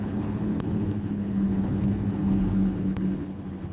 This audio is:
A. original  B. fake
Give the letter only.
B